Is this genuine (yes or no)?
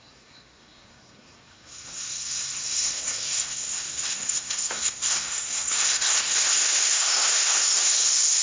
no